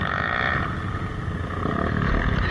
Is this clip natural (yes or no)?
yes